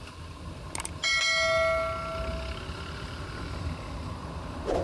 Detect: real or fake real